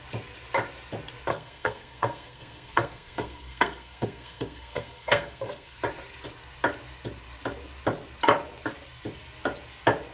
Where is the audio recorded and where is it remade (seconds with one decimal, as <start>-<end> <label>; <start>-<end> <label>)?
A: 0.0-1.3 recorded; 1.3-5.8 remade; 5.8-10.1 recorded